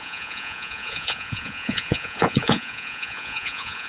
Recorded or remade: remade